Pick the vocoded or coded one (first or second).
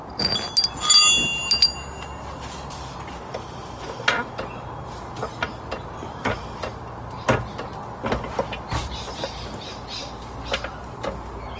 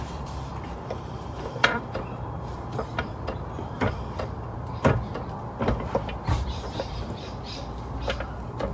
second